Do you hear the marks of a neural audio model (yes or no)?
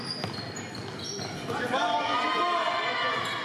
no